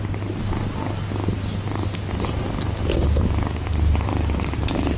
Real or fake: real